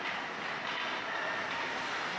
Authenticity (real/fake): real